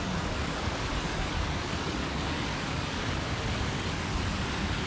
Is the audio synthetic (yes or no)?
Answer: yes